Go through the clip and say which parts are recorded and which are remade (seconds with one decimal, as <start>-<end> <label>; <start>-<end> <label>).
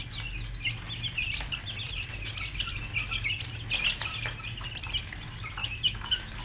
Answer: 0.0-5.6 recorded; 5.6-6.4 remade